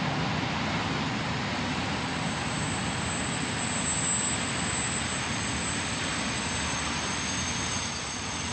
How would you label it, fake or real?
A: real